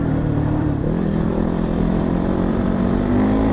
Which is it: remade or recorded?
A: remade